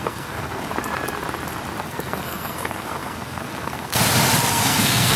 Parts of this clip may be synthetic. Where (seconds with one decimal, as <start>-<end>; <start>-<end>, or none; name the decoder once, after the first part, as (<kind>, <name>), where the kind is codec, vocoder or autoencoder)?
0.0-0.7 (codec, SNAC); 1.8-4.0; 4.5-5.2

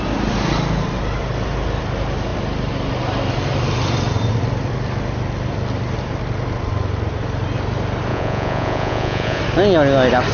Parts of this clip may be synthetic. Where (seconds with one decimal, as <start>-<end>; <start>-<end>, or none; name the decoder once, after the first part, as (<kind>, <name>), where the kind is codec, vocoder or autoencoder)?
8.1-9.4 (vocoder, Vocos)

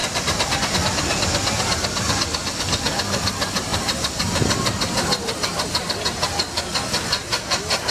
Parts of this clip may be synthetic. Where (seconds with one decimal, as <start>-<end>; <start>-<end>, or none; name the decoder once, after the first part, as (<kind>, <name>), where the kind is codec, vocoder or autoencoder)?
0.0-0.6 (vocoder, BigVGAN v2); 3.7-5.9

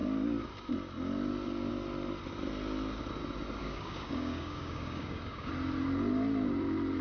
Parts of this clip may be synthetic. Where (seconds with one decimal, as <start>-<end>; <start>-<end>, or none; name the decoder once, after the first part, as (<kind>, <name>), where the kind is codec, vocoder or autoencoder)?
3.6-5.5 (codec, DAC)

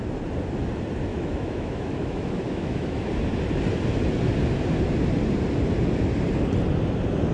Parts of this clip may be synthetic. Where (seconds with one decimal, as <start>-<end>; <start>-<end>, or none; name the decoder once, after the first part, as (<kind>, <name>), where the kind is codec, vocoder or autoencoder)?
1.1-3.1 (autoencoder, DAC-VAE)

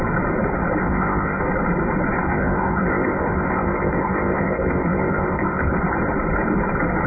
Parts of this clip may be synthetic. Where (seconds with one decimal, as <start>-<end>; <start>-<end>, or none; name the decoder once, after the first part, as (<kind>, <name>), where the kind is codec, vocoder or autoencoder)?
0.8-1.4 (codec, ZipCodec); 2.2-5.7